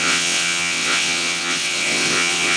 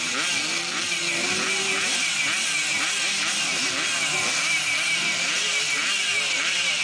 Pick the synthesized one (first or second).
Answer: first